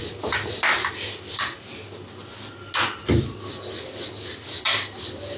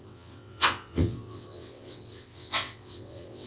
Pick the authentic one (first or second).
first